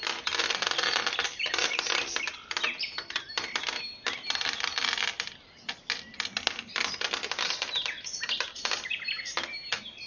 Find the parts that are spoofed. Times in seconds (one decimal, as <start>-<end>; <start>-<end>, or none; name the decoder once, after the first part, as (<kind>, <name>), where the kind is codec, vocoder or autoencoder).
none